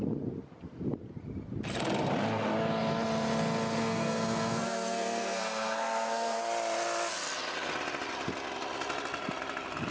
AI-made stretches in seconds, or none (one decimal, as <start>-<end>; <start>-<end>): 3.8-6.4